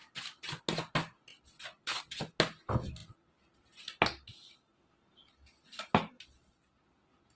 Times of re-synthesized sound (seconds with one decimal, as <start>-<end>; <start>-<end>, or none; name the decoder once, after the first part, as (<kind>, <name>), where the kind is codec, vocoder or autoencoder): none